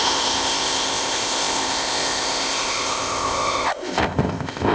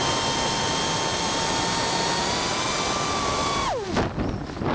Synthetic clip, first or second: first